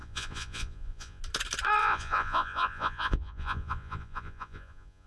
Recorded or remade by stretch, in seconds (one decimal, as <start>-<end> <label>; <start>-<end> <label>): 0.0-1.2 remade; 1.2-1.8 recorded; 1.8-5.1 remade